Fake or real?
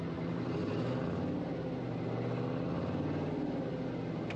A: real